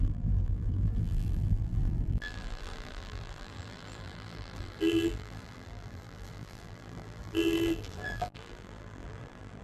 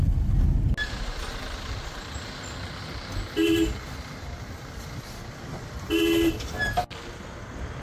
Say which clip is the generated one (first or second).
first